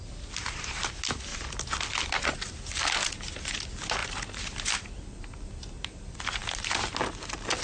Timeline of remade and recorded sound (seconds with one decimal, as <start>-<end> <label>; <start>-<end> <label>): 0.0-7.6 recorded